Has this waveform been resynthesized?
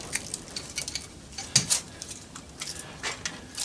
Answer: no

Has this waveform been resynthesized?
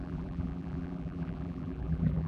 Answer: yes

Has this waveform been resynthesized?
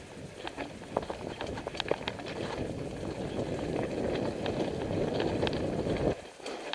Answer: no